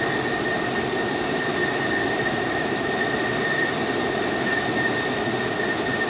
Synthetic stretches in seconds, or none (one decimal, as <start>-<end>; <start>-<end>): 1.6-5.3